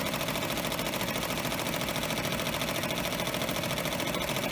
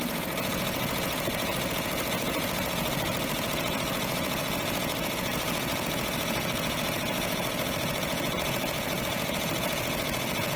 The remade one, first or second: second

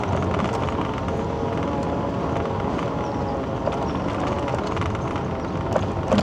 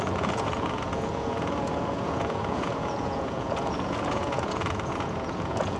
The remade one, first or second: second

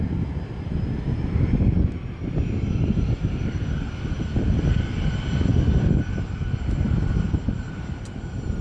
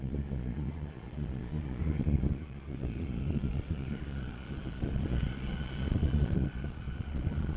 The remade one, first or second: second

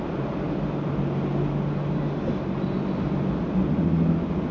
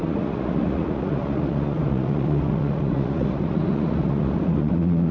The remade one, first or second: second